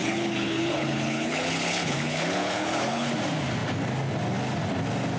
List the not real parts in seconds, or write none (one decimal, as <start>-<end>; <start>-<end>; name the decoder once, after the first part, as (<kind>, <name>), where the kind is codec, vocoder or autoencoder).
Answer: 0.0-3.1 (codec, HILCodec)